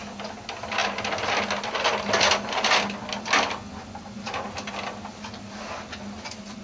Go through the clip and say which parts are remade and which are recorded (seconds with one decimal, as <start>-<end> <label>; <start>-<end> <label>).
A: 0.0-6.6 recorded